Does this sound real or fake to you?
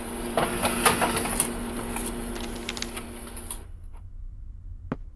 real